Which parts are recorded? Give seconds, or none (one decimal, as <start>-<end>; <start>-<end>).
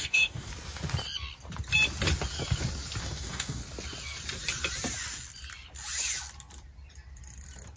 0.5-3.0; 3.6-7.8